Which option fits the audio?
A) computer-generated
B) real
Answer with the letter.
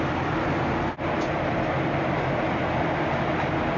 B